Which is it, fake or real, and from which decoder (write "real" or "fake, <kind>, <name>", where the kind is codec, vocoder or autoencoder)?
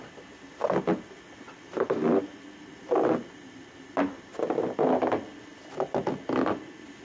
real